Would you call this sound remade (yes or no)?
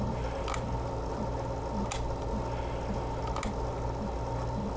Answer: no